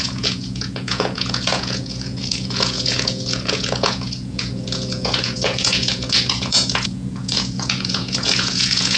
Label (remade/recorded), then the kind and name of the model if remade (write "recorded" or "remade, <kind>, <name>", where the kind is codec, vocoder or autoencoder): remade, vocoder, Vocos